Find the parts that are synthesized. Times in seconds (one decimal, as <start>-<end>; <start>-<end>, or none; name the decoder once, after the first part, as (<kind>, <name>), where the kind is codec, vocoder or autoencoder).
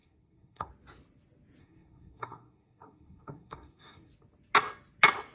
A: 0.0-0.7 (codec, SNAC); 1.6-4.1